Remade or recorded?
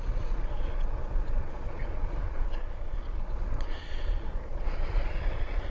remade